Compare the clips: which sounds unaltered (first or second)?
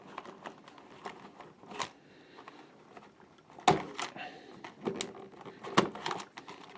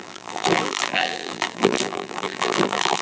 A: first